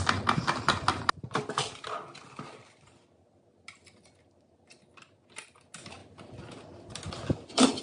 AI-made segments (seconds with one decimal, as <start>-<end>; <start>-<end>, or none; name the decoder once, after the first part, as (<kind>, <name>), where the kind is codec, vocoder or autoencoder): none